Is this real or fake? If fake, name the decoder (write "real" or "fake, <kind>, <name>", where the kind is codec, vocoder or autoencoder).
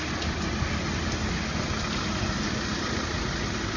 real